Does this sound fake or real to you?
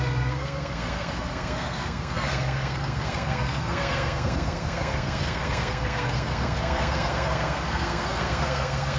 fake